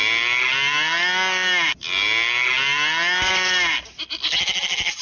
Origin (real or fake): real